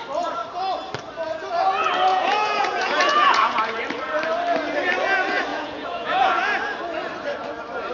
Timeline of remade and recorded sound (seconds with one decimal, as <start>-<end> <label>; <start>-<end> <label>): 0.0-2.1 recorded; 2.1-3.8 remade; 3.8-5.5 recorded; 5.5-6.4 remade; 6.4-7.9 recorded